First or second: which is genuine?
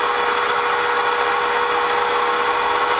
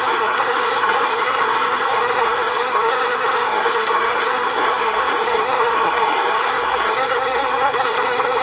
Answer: first